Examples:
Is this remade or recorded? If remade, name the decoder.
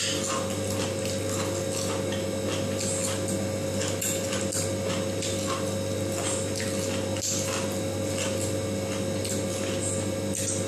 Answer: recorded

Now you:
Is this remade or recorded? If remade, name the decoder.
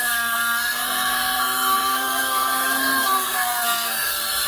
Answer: remade, codec, SNAC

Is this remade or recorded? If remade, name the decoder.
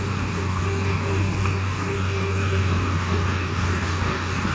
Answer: remade, codec, DAC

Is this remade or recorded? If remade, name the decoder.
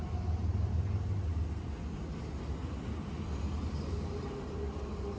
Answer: recorded